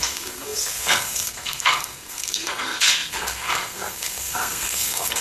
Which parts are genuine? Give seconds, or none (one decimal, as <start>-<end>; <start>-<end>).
none